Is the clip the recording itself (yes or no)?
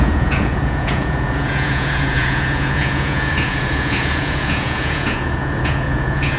no